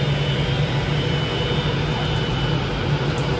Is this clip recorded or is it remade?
recorded